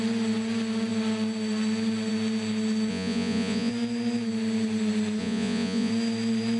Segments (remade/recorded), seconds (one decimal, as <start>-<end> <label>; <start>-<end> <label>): 0.0-2.9 recorded; 2.9-3.7 remade; 3.7-5.2 recorded; 5.2-5.9 remade; 5.9-6.6 recorded